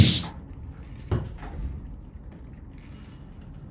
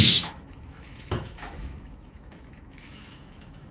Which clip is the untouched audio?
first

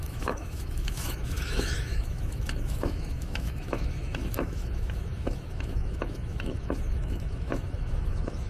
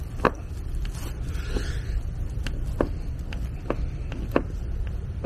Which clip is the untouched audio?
second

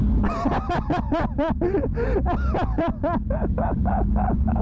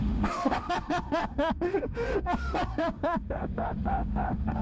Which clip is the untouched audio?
first